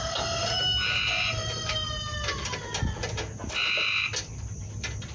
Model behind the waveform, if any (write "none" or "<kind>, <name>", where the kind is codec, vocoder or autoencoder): none